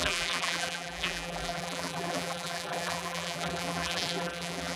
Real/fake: fake